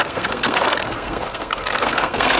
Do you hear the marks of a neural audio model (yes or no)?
yes